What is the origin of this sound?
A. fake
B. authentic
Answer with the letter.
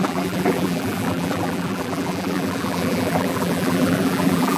A